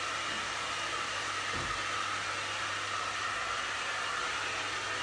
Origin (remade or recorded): recorded